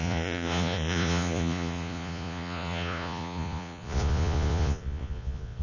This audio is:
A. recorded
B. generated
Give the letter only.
B